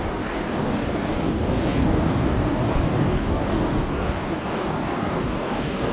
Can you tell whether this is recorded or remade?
remade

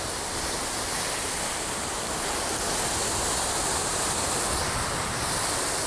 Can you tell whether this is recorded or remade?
recorded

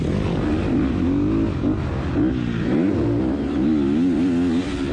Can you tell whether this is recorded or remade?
recorded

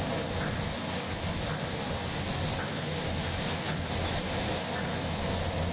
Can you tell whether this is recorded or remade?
recorded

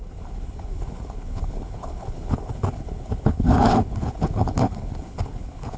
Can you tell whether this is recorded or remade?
remade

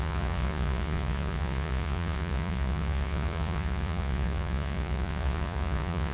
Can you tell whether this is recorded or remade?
remade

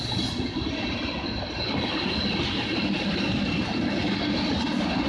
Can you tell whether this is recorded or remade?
recorded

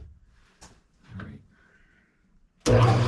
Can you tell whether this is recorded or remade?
recorded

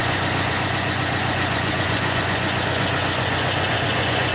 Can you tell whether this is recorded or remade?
remade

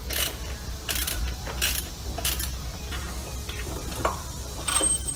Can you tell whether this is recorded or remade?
remade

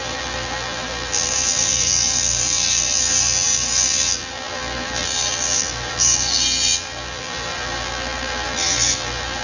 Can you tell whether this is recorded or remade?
remade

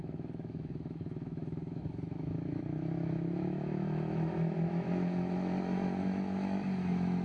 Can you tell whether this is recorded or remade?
remade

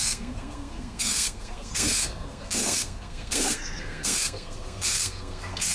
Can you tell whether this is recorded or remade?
remade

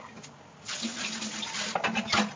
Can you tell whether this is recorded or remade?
recorded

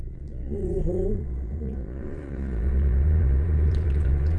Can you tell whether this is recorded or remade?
remade